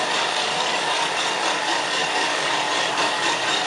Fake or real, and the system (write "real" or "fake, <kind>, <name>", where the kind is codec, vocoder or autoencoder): fake, codec, DAC